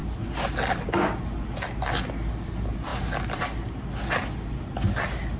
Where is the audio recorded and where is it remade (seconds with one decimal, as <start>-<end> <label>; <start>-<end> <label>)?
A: 0.0-5.4 recorded